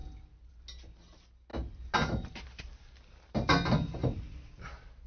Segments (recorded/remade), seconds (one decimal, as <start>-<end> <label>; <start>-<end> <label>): 0.0-5.1 recorded